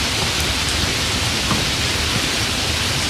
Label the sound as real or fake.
real